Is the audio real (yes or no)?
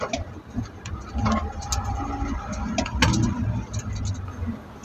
yes